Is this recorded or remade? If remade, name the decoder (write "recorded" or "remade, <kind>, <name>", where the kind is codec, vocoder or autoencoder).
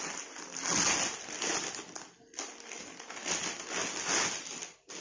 recorded